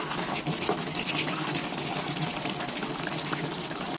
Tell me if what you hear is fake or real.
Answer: real